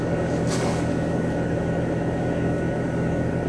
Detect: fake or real fake